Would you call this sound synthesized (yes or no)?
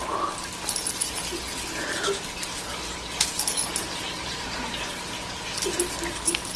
no